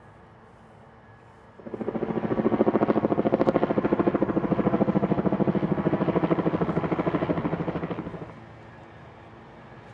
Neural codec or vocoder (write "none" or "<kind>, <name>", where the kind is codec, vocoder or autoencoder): none